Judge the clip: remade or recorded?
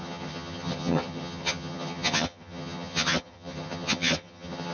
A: remade